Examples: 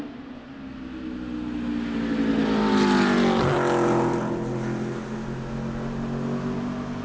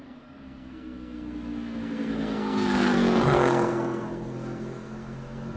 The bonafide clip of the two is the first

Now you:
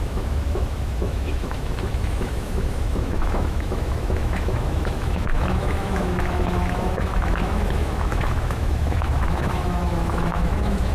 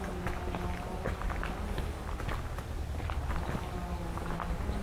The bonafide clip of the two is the second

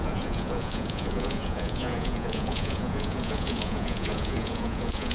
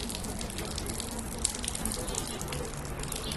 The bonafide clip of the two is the second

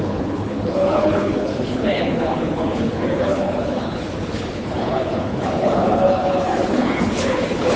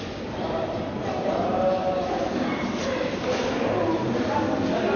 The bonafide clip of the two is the second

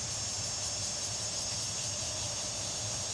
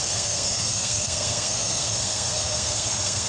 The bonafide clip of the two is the first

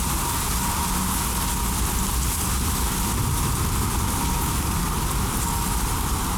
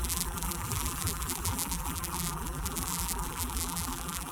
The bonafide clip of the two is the first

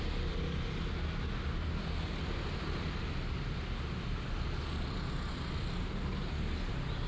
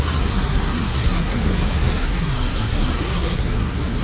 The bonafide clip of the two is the first